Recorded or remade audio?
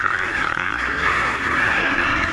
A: remade